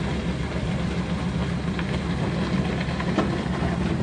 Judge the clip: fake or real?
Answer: real